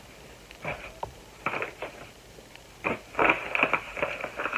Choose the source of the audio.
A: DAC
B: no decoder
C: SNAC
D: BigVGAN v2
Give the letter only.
D